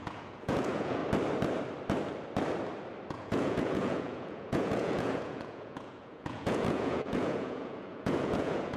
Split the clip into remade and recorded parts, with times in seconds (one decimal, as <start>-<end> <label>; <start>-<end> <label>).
0.0-1.0 remade; 1.0-3.1 recorded; 3.1-8.8 remade